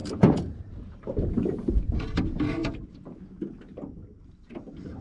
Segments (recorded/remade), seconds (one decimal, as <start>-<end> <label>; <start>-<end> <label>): 0.0-1.7 remade; 1.7-2.6 recorded; 2.6-3.2 remade; 3.2-4.0 recorded; 4.0-5.0 remade